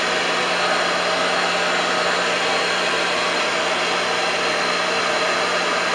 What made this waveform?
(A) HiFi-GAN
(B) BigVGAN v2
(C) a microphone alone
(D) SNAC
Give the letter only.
C